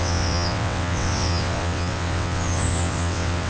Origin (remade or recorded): remade